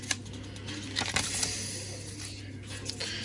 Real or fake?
real